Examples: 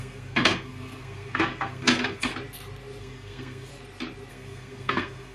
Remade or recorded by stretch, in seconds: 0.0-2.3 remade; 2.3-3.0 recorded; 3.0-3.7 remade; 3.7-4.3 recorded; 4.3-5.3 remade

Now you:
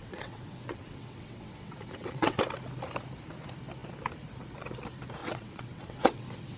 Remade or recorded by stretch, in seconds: 0.0-2.4 remade; 2.4-5.2 recorded; 5.2-6.6 remade